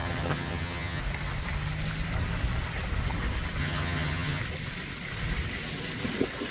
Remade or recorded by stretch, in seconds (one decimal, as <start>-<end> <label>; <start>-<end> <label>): 0.0-1.0 remade; 1.0-3.6 recorded; 3.6-4.4 remade; 4.4-6.5 recorded